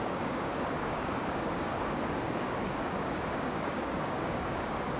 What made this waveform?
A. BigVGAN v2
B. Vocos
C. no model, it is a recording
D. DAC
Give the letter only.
D